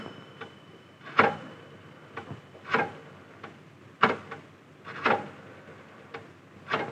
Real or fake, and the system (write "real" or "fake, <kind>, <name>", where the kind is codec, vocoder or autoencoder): real